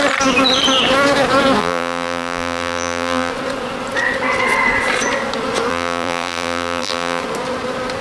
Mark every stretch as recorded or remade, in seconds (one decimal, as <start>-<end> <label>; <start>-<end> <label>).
0.0-1.6 recorded; 1.6-3.3 remade; 3.3-5.7 recorded; 5.7-7.2 remade; 7.2-8.0 recorded